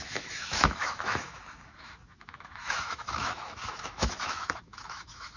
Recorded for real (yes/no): no